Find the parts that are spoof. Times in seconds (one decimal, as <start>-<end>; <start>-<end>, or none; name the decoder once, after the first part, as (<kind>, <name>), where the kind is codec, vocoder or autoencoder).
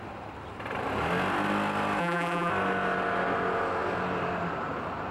2.0-2.5 (vocoder, BigVGAN v2)